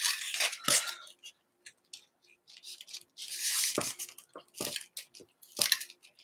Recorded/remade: recorded